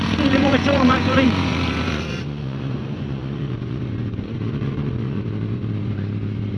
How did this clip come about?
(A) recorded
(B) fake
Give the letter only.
B